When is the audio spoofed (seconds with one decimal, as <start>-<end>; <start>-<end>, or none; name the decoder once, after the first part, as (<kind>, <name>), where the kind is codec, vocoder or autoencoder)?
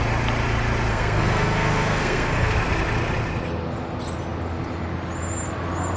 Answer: 0.9-2.5 (codec, SNAC)